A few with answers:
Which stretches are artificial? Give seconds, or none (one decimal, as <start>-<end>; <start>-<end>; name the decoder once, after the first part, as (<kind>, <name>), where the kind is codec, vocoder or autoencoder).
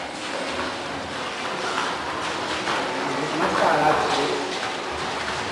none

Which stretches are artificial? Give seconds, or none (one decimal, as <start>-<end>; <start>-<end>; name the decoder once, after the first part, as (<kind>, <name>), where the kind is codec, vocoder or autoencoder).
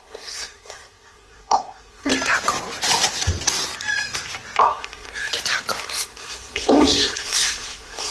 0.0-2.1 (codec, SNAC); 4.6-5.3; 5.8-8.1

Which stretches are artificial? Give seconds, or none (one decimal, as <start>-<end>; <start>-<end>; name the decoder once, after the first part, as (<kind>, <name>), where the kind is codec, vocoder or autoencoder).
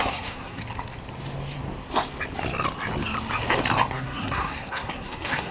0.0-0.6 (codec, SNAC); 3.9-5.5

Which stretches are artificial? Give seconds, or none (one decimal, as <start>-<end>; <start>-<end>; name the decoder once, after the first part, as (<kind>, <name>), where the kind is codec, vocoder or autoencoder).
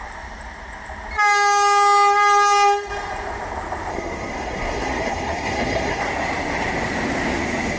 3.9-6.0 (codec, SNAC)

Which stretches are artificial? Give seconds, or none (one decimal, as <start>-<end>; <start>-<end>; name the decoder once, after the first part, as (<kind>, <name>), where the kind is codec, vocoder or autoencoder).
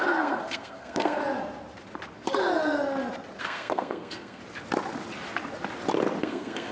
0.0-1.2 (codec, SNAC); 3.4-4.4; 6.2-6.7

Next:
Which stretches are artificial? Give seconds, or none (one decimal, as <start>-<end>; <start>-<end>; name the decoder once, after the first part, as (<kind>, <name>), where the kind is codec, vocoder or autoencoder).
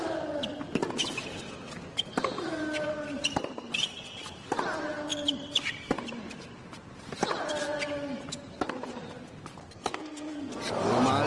9.6-10.5 (codec, SNAC)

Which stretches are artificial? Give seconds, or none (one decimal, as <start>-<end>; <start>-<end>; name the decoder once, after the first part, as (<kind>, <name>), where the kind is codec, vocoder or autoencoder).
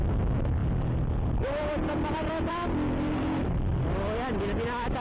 none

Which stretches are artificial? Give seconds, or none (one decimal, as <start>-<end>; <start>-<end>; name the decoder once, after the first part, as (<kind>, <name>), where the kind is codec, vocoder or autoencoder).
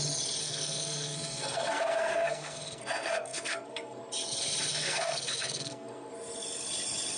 0.4-4.0 (codec, SNAC); 4.7-6.1